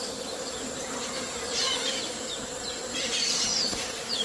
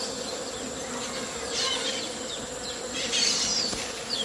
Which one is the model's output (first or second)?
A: first